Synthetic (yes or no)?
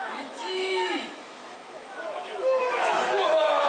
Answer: yes